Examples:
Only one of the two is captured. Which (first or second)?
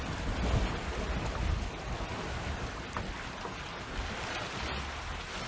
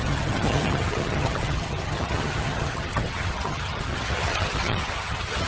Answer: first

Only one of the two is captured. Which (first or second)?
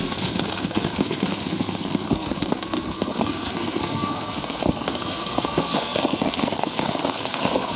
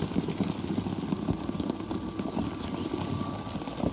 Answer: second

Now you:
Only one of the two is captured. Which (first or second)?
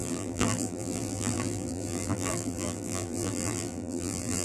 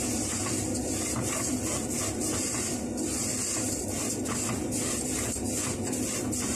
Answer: second